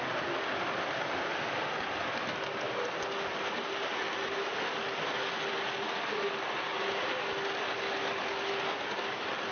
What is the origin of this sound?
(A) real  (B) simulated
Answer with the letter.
A